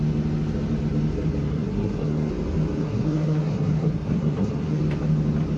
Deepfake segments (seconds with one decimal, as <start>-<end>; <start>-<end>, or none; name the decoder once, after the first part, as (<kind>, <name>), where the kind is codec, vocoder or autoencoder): 1.5-2.3 (codec, SNAC); 2.8-4.8